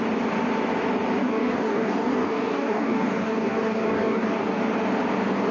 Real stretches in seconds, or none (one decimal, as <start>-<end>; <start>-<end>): 0.0-1.2; 4.5-5.5